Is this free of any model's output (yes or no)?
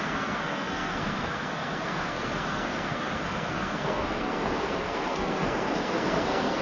no